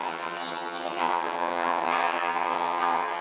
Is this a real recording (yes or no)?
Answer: no